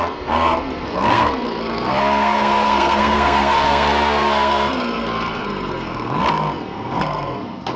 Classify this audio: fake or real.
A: fake